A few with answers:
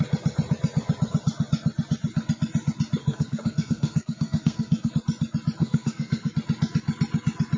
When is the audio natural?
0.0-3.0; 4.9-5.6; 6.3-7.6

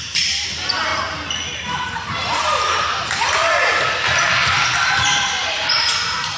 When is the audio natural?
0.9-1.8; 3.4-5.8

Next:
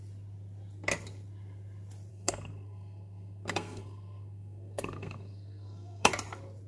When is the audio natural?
0.0-2.1; 6.1-6.7

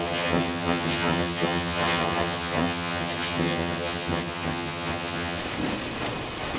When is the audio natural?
5.4-6.6